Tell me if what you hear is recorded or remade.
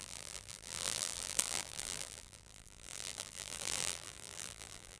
remade